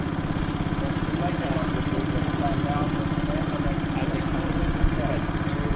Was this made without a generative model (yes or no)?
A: yes